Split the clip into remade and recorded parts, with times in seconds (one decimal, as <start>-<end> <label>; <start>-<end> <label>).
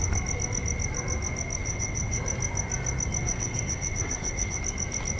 0.0-1.6 recorded; 1.6-2.2 remade; 2.2-3.2 recorded; 3.2-4.6 remade; 4.6-5.2 recorded